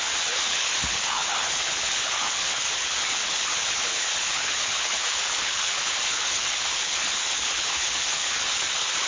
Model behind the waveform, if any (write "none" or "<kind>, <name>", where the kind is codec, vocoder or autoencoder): codec, HILCodec